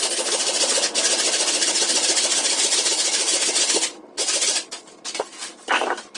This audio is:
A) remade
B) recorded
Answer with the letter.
B